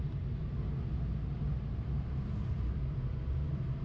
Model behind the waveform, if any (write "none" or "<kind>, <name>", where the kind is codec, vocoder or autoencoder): none